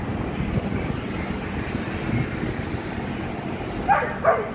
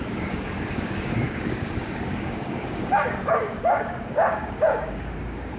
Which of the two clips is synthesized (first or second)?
second